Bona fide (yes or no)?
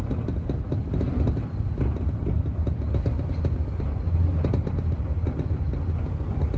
yes